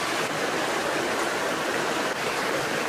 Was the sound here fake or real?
real